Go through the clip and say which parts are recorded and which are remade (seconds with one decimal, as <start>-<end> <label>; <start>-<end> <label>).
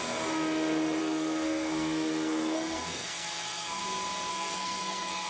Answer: 0.0-1.0 recorded; 1.0-3.8 remade; 3.8-4.3 recorded; 4.3-5.3 remade